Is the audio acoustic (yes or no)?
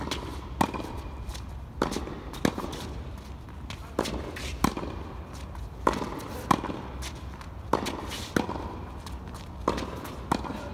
yes